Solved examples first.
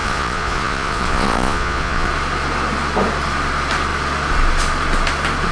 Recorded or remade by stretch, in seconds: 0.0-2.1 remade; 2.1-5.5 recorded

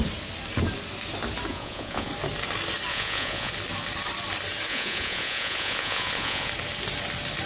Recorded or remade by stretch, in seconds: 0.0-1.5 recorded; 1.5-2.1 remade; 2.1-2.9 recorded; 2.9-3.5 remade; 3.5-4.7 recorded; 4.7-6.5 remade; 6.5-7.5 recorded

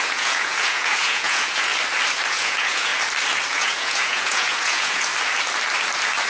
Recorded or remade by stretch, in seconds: 0.0-1.7 remade; 1.7-2.3 recorded; 2.3-2.9 remade; 2.9-3.5 recorded; 3.5-5.1 remade; 5.1-6.3 recorded

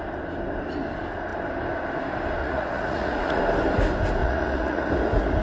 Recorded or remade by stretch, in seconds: 0.0-2.4 recorded; 2.4-3.4 remade; 3.4-4.2 recorded; 4.2-4.9 remade; 4.9-5.4 recorded

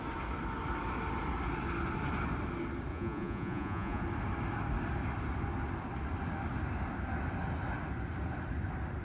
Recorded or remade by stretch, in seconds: 0.0-2.9 recorded; 2.9-4.0 remade; 4.0-9.0 recorded